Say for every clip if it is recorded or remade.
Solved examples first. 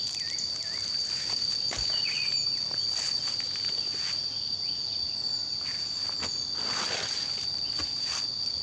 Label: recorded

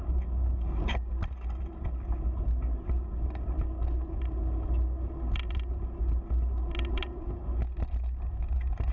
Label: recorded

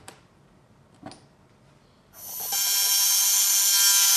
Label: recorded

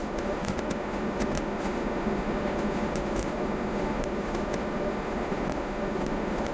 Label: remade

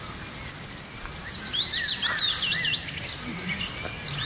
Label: recorded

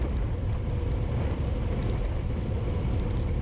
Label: recorded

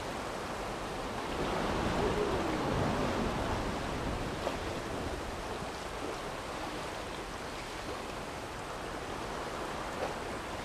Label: recorded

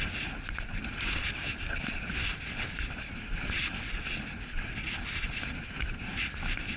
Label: recorded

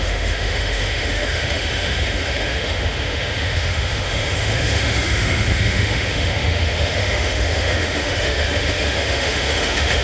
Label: remade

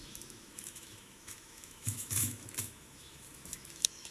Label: remade